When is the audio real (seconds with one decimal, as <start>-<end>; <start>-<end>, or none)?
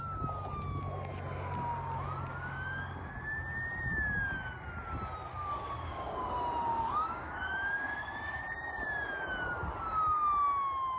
0.0-2.3; 3.1-5.3; 6.3-6.7; 8.4-11.0